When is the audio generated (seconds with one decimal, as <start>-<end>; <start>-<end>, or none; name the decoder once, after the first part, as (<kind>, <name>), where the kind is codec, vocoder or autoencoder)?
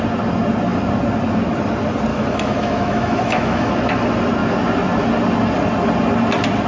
2.1-3.7 (autoencoder, DAC-VAE)